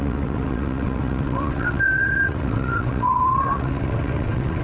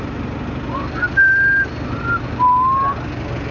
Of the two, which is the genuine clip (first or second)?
second